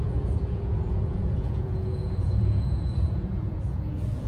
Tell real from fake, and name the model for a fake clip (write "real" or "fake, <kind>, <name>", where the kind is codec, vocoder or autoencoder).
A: fake, vocoder, Vocos